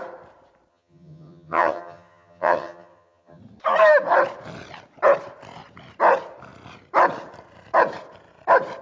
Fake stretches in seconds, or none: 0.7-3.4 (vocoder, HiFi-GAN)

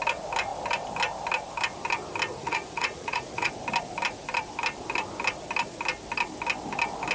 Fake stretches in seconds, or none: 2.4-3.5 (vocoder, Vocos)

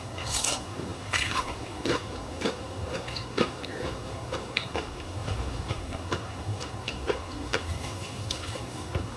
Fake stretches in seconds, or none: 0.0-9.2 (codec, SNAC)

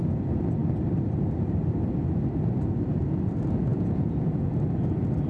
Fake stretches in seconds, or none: 3.7-4.5 (vocoder, Vocos)

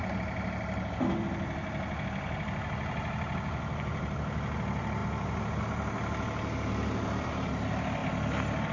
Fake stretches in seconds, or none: none